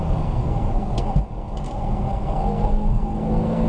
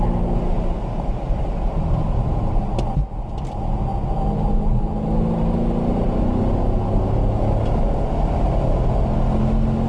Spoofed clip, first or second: first